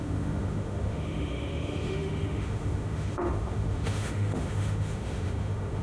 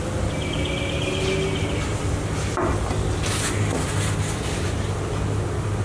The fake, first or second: first